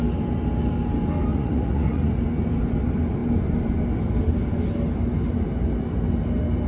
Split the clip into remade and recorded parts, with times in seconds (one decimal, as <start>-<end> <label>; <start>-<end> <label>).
0.0-1.3 recorded; 1.3-2.1 remade; 2.1-6.7 recorded